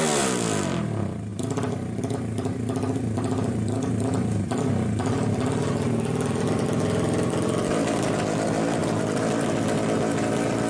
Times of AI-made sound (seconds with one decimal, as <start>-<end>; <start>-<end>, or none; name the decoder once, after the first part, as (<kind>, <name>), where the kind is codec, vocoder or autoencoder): none

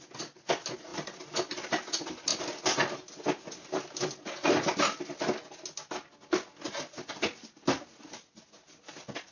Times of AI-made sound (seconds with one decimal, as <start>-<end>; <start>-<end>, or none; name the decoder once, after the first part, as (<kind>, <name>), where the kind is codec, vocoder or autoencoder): none